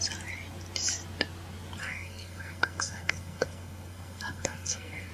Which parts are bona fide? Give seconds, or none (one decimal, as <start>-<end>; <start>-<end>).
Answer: 0.0-1.8